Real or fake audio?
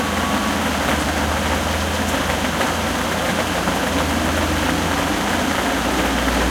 real